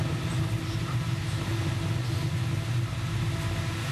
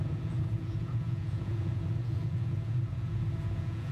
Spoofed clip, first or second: second